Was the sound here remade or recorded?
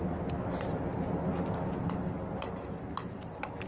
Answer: recorded